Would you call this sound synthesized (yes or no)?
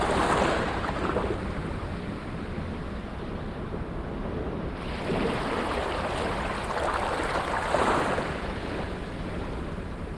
no